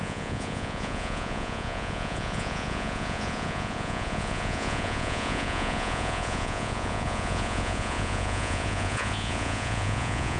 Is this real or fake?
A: fake